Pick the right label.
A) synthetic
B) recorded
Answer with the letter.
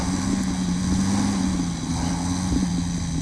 B